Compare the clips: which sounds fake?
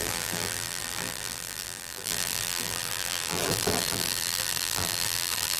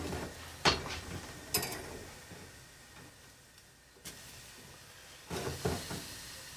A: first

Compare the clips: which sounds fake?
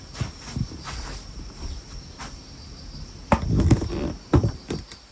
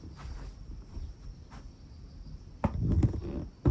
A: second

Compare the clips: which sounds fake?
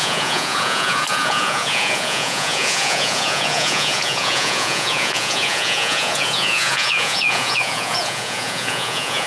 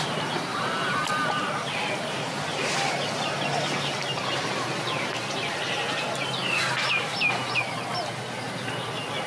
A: first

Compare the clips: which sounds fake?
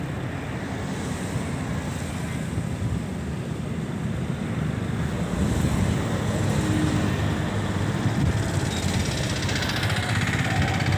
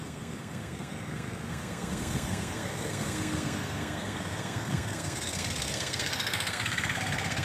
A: second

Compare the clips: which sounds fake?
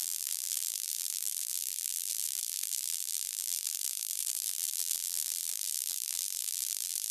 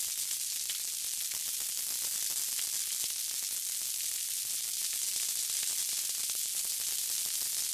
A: first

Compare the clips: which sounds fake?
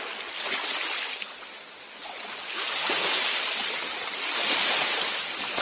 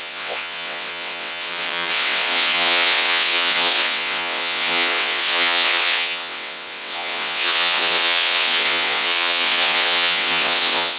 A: second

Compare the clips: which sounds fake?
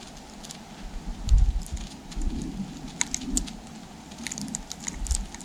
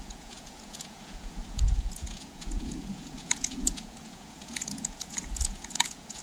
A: second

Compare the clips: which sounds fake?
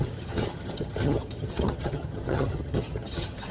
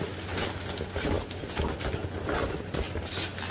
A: first